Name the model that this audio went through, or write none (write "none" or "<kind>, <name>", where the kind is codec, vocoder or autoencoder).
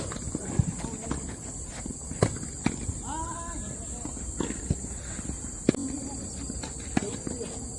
none